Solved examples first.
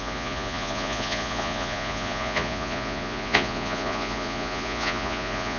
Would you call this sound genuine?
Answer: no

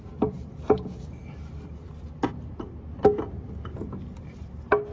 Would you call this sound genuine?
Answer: yes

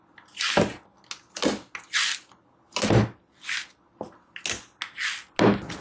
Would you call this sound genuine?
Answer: yes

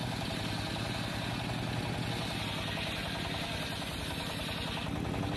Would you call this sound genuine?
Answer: yes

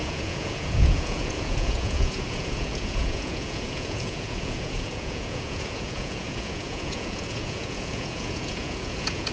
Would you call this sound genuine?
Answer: no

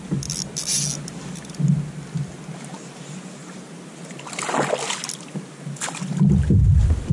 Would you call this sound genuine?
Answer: yes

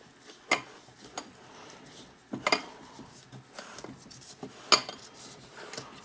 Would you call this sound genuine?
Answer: yes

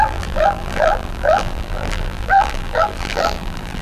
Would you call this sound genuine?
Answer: no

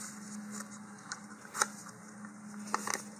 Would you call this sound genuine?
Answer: yes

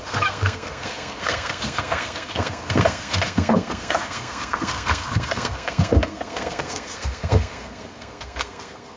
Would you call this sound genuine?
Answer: no